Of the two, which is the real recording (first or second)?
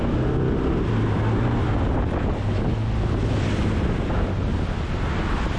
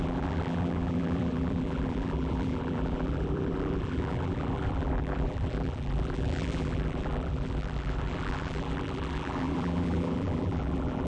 first